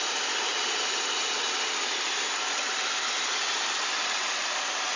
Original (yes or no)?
yes